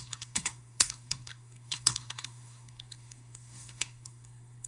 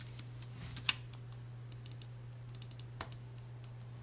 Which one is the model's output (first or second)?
first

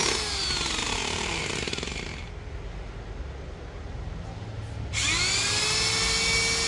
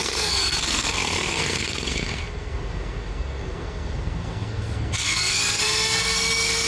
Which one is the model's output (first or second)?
second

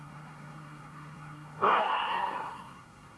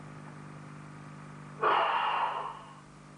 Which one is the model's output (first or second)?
first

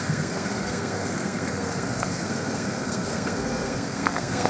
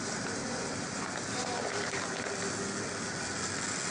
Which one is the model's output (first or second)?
first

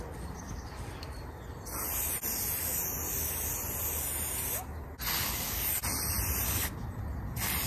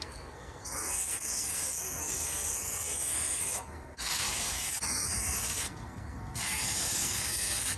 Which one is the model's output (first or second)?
second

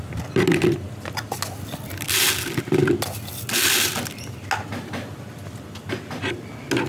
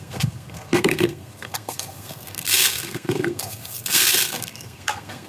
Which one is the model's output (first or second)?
second